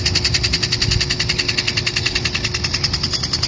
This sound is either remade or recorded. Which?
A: recorded